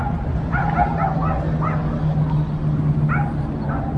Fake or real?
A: real